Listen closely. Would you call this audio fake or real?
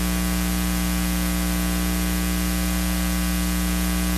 real